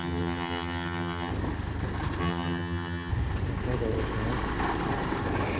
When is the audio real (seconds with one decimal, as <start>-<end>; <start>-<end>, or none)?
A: 1.3-2.2; 3.1-5.6